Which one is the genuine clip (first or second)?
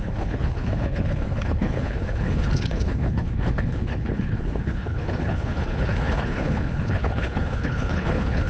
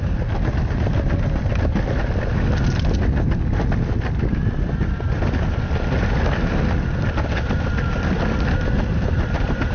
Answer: second